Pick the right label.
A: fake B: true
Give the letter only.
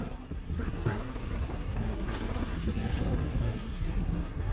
A